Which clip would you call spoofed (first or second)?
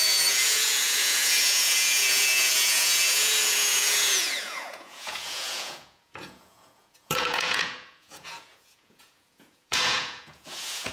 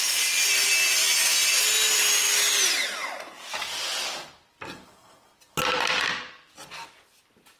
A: first